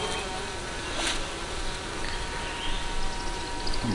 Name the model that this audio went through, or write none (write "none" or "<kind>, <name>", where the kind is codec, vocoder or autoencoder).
none